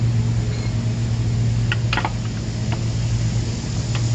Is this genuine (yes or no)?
yes